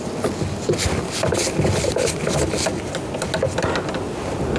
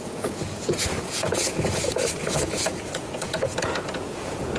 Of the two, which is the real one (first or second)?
first